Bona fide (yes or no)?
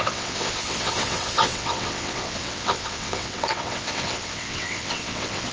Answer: no